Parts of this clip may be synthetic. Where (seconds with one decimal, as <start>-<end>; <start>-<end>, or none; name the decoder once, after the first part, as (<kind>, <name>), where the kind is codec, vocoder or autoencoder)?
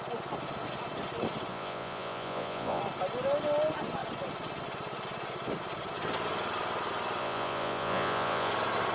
1.5-2.8 (vocoder, Vocos); 7.2-8.5